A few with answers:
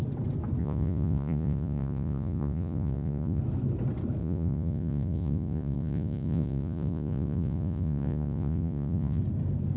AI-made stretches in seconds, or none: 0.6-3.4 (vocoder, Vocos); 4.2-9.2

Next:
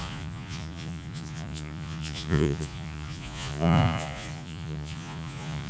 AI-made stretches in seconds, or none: 0.0-5.7 (vocoder, Vocos)

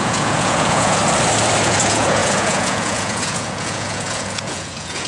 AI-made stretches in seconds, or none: 0.0-1.0 (vocoder, Vocos); 1.6-5.1

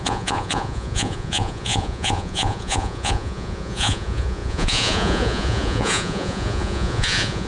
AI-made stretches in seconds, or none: 0.0-7.5 (vocoder, Vocos)

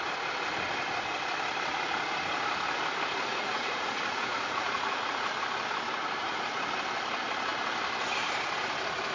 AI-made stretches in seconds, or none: 3.3-5.3 (vocoder, Vocos); 6.2-6.7

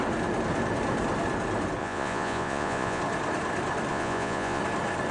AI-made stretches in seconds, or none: 1.8-3.0 (vocoder, Vocos); 3.9-4.6

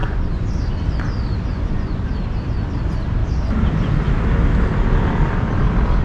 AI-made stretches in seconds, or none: 0.0-0.7 (vocoder, Vocos); 1.5-2.1